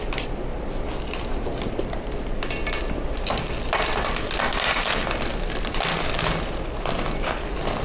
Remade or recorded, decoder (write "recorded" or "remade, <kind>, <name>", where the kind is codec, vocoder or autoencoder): recorded